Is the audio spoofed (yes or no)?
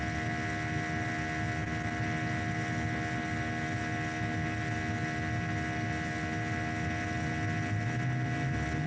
no